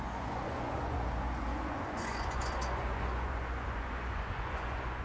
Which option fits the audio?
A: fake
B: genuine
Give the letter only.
A